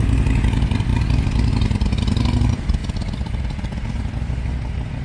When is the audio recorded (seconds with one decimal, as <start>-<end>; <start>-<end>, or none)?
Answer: 0.0-5.0